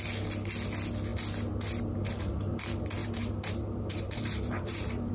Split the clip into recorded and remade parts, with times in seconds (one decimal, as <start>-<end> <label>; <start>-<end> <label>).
0.0-3.0 recorded; 3.0-5.1 remade